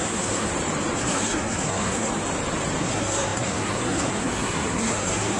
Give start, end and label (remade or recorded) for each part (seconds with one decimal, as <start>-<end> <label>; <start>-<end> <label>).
0.0-0.5 remade; 0.5-1.0 recorded; 1.0-2.1 remade; 2.1-2.8 recorded; 2.8-5.4 remade